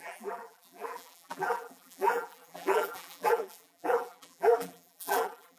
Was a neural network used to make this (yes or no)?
yes